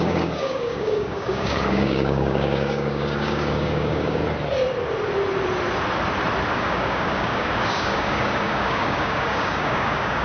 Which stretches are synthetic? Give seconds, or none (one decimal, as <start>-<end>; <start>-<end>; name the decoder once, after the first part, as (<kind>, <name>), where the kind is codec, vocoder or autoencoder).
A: 0.0-4.2 (codec, DAC); 6.5-10.2